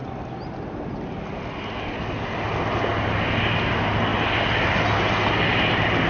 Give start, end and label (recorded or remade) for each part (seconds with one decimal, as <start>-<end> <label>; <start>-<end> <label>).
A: 0.0-6.1 recorded